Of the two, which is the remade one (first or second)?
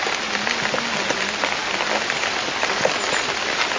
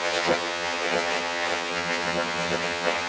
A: second